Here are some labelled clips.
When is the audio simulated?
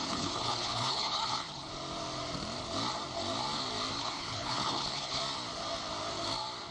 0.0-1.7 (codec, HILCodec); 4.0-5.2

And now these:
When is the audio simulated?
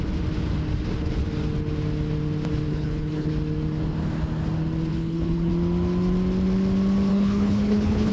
2.7-3.3 (codec, HILCodec); 4.9-5.5; 7.1-8.1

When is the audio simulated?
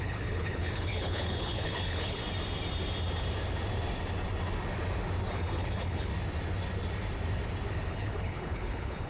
0.0-2.2 (codec, HILCodec); 5.3-6.1; 7.9-9.1